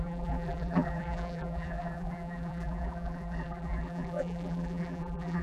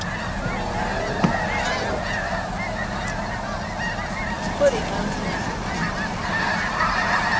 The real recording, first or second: second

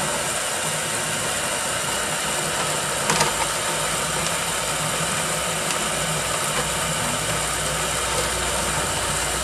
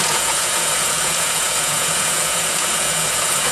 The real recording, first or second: first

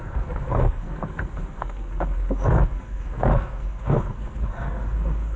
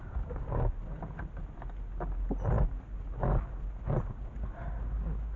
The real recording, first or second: second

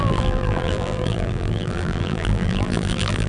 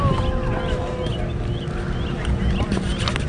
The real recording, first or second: second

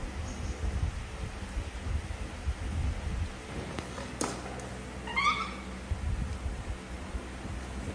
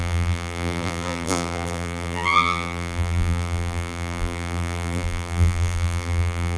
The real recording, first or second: first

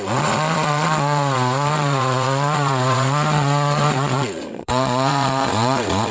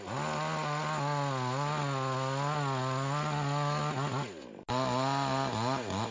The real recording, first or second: second